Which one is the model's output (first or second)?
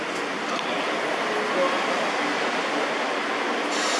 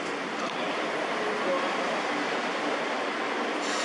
second